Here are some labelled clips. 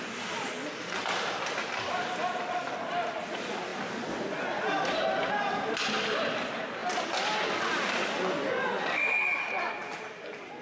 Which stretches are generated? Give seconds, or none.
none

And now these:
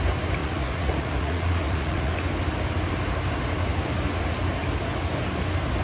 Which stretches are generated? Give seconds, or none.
0.4-2.1 (vocoder, Vocos)